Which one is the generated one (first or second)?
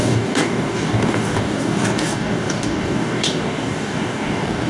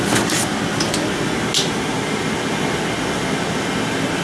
first